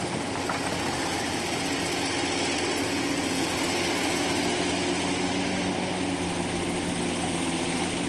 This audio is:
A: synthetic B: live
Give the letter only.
B